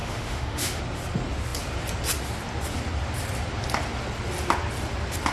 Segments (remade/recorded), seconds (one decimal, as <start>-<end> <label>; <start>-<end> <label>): 0.0-0.8 remade; 0.8-5.3 recorded